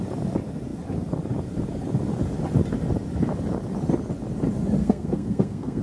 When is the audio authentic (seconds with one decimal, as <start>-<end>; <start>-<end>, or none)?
0.0-4.8